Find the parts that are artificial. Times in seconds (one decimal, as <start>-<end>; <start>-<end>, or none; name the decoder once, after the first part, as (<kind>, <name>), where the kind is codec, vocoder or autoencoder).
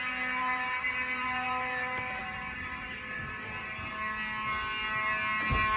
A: 0.4-3.9 (vocoder, BigVGAN v2)